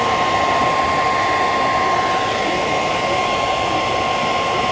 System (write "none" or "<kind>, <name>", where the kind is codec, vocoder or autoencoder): none